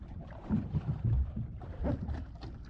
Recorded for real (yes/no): no